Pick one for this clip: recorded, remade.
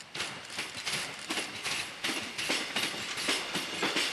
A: remade